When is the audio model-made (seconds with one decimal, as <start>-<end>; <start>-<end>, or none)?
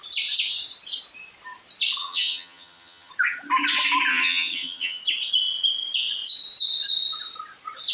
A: 2.0-3.1; 4.1-5.0